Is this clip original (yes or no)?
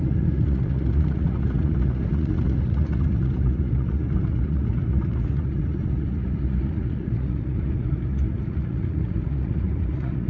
no